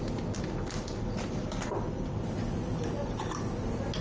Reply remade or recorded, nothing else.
recorded